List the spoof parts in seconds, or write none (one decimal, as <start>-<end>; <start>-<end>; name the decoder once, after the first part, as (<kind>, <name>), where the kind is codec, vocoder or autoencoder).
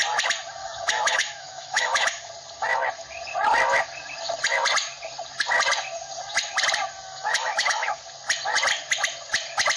0.6-2.3 (autoencoder, DAC-VAE); 7.1-8.0